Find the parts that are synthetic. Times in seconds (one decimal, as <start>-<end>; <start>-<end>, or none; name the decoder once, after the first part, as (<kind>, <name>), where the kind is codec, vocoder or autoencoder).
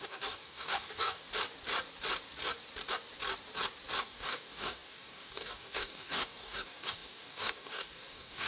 0.0-1.2 (codec, DAC); 4.0-8.5